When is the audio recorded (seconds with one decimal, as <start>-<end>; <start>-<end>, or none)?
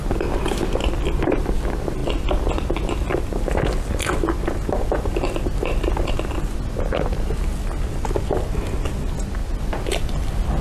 0.0-10.6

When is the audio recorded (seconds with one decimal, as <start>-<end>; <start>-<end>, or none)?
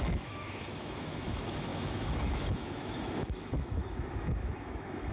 none